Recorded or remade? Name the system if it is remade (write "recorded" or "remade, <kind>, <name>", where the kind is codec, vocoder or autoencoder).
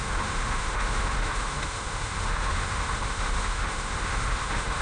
remade, autoencoder, DAC-VAE